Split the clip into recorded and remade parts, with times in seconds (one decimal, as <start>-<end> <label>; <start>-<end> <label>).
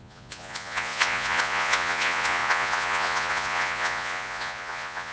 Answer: 0.0-5.1 remade